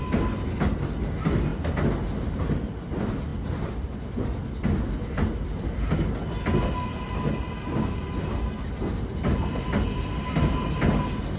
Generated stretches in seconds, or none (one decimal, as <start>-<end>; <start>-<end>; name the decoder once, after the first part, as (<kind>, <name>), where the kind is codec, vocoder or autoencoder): none